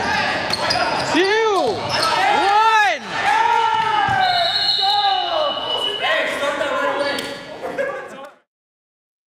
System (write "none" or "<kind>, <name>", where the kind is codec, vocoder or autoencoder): vocoder, Vocos